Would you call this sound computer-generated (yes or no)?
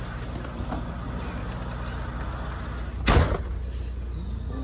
no